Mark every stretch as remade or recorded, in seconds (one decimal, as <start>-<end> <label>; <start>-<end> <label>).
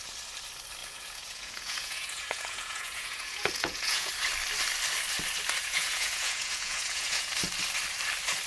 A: 0.0-0.8 recorded; 0.8-4.1 remade; 4.1-5.6 recorded; 5.6-7.3 remade; 7.3-8.5 recorded